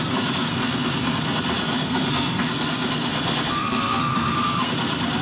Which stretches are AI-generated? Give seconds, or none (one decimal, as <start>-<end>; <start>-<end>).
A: 0.5-1.2; 1.6-4.7